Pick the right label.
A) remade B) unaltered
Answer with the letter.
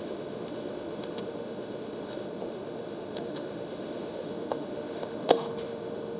A